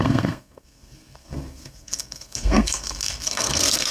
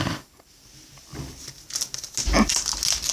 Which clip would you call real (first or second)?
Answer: second